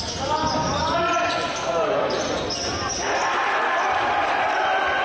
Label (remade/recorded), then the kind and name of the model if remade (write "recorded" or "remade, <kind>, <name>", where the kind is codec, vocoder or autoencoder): recorded